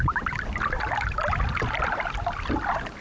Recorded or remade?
recorded